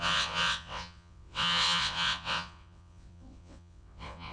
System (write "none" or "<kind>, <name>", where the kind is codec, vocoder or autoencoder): vocoder, WaveNeXt